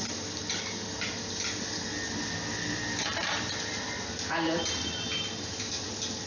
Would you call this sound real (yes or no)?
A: yes